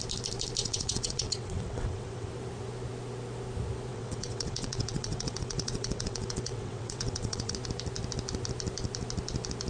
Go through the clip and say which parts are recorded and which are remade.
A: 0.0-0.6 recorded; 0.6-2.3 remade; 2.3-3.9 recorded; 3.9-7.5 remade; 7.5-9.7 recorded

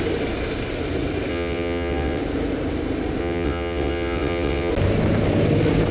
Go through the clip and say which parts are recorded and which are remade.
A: 0.0-1.3 recorded; 1.3-2.2 remade; 2.2-3.2 recorded; 3.2-4.7 remade; 4.7-5.9 recorded

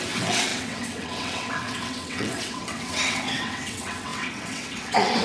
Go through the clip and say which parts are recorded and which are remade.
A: 0.0-5.2 remade

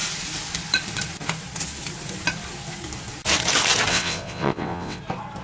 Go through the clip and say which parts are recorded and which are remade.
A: 0.0-3.9 recorded; 3.9-5.0 remade; 5.0-5.4 recorded

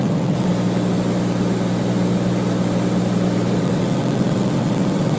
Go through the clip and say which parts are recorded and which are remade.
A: 0.0-0.5 remade; 0.5-3.6 recorded; 3.6-5.2 remade

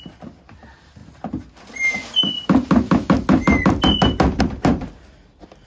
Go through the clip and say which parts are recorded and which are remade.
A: 0.0-5.7 recorded

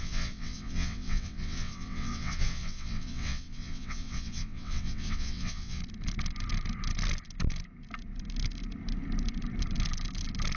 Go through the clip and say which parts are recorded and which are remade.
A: 0.0-5.8 remade; 5.8-10.6 recorded

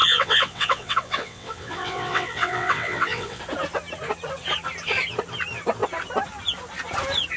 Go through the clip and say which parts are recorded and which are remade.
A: 0.0-3.4 remade; 3.4-7.4 recorded